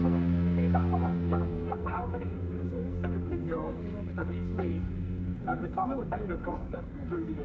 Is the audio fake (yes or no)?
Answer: yes